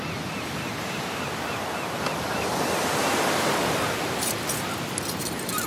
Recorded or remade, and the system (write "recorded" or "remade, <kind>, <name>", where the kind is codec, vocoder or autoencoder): recorded